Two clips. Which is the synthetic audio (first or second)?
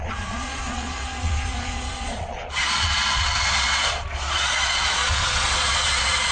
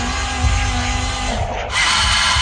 first